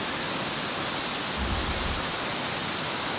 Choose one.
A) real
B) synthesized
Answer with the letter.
A